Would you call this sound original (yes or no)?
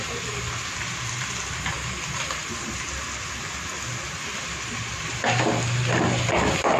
yes